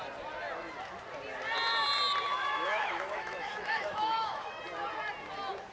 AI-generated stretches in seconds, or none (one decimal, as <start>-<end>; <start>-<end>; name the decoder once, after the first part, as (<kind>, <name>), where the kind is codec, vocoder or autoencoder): 2.3-4.6 (autoencoder, DAC-VAE)